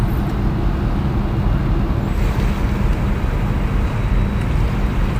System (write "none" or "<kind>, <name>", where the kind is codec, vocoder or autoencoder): none